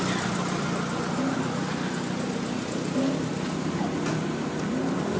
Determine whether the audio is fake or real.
real